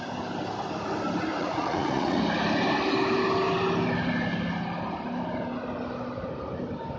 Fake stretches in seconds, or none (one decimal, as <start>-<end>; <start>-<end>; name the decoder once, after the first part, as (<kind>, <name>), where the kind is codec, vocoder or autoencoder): 1.4-2.2 (vocoder, Vocos)